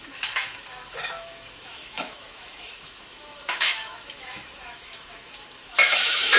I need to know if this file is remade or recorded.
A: remade